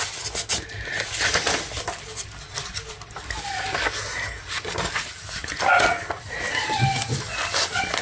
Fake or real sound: real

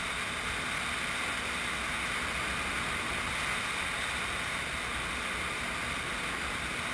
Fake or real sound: real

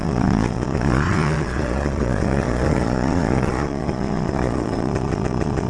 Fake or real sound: fake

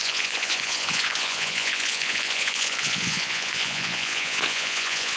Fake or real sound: fake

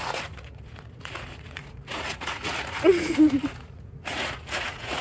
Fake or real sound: fake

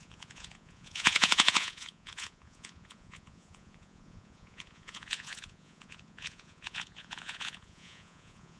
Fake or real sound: fake